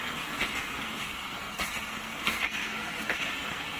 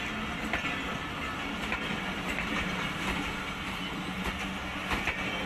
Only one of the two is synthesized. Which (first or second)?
first